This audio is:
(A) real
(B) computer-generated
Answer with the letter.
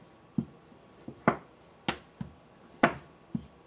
A